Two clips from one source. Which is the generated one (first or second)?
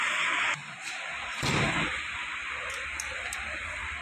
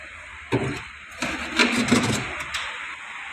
first